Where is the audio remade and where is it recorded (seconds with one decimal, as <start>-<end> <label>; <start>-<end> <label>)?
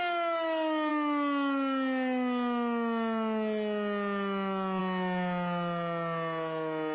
0.0-6.9 recorded